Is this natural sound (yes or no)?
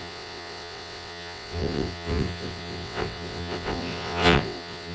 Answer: no